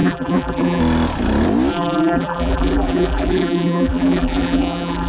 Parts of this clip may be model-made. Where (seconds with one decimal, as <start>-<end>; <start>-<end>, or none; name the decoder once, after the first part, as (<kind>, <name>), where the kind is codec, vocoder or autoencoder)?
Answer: 0.0-0.8 (vocoder, BigVGAN v2); 1.7-5.1